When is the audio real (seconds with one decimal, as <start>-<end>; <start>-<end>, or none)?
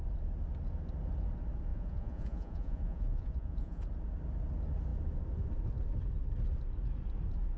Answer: 0.0-1.7; 3.8-7.6